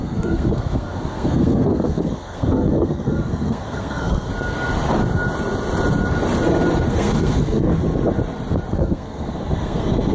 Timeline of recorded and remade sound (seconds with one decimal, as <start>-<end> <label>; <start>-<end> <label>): 0.0-4.3 remade; 4.3-6.9 recorded; 6.9-7.7 remade; 7.7-8.7 recorded; 8.7-10.1 remade